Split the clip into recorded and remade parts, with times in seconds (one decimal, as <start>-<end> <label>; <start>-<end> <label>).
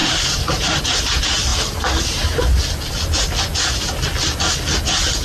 0.0-1.0 remade; 1.0-5.2 recorded